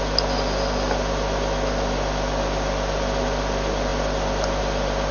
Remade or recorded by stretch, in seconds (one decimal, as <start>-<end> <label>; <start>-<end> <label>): 0.0-5.1 recorded